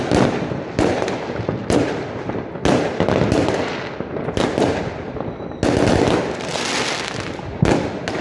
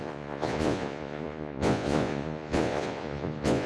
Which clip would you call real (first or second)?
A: first